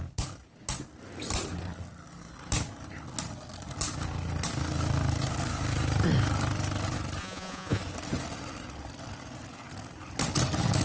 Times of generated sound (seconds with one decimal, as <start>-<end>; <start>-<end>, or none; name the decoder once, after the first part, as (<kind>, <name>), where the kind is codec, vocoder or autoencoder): 7.2-7.8 (vocoder, Vocos)